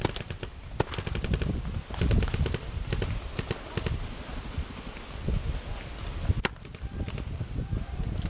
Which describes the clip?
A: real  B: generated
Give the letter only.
A